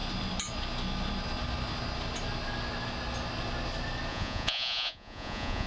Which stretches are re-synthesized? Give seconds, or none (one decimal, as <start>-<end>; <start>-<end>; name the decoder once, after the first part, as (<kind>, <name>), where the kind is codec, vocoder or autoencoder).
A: 4.1-5.7 (vocoder, Vocos)